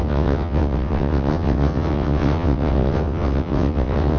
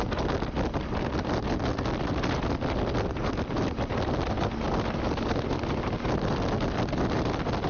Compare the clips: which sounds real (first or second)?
second